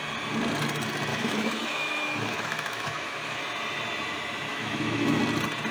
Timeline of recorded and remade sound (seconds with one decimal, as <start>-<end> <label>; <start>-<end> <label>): 0.0-1.1 recorded; 1.1-3.4 remade; 3.4-4.5 recorded; 4.5-5.2 remade; 5.2-5.7 recorded